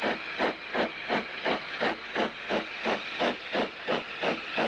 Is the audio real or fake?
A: real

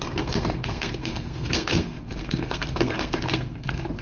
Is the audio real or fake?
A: fake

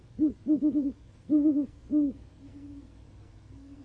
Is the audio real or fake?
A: fake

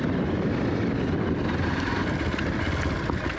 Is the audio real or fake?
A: real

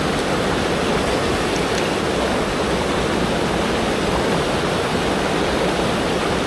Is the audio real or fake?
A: real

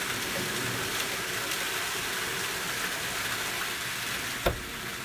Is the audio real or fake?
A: real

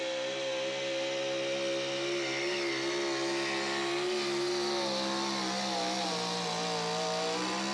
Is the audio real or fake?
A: real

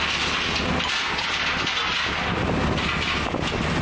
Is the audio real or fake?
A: real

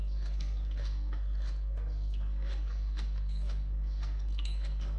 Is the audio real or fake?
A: fake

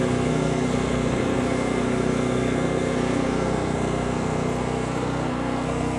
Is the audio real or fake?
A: fake